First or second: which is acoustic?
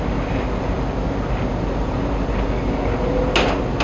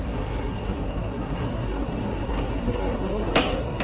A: first